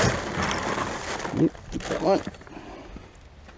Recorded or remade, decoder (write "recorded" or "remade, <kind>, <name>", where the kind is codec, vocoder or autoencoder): recorded